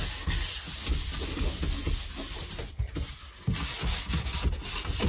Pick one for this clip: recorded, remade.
recorded